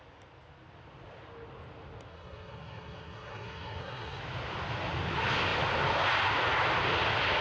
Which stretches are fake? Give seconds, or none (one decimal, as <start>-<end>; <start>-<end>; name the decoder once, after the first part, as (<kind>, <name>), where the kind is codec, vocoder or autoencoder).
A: 2.1-4.2 (codec, SNAC)

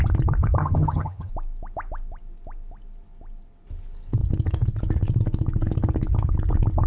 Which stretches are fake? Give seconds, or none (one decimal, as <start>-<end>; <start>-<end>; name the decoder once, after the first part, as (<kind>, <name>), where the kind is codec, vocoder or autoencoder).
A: 0.6-1.3 (vocoder, HiFi-GAN)